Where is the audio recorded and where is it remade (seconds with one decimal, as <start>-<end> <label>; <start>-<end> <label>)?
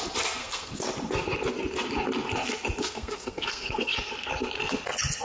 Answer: 0.0-0.4 recorded; 0.4-0.9 remade; 0.9-2.8 recorded; 2.8-4.3 remade; 4.3-5.2 recorded